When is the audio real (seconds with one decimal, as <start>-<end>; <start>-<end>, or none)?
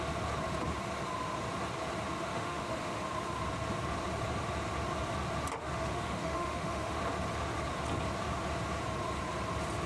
0.0-2.3; 3.0-5.6; 7.0-9.9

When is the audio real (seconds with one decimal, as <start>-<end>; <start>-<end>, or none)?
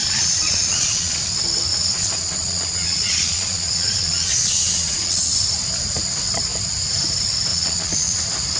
1.2-1.7; 5.3-7.5; 8.2-8.6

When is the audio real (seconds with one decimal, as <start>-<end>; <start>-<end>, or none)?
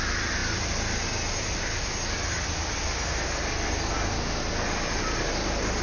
0.0-5.8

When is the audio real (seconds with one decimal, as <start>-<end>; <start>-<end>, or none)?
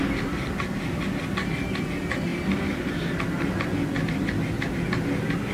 0.0-5.5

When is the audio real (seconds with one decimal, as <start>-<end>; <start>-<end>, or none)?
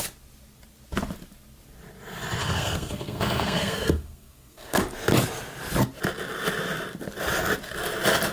0.0-2.4; 4.8-8.3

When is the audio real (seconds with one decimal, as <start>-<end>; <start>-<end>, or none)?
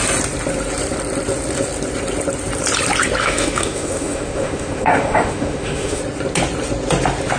0.0-3.2; 6.0-7.4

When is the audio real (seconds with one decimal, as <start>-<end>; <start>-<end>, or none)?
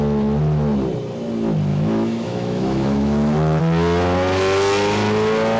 0.0-1.7; 3.6-5.6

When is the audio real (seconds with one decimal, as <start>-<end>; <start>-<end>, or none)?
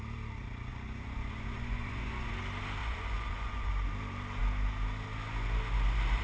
0.0-0.7; 2.3-2.8; 3.7-6.2